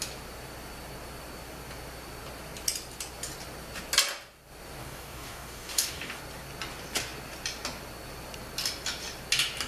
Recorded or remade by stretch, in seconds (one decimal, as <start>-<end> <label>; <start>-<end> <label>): 0.0-4.8 recorded; 4.8-6.2 remade; 6.2-9.7 recorded